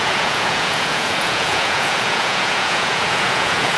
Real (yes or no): no